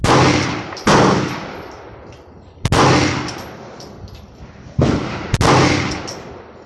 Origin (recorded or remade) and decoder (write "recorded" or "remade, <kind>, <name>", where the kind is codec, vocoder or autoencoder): recorded